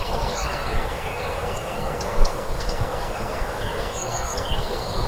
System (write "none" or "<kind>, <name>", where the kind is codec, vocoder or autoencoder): codec, SNAC